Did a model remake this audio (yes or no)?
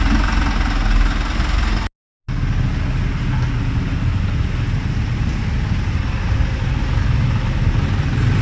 no